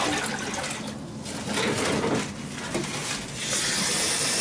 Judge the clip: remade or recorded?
recorded